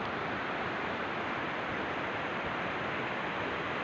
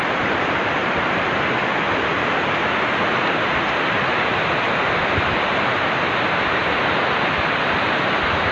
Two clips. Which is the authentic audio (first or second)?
first